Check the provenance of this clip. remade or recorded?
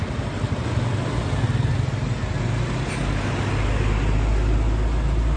recorded